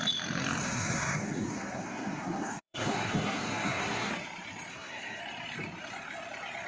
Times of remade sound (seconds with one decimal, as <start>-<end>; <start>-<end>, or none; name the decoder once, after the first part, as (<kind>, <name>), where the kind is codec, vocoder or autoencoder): 0.6-4.1 (codec, SNAC); 4.7-5.2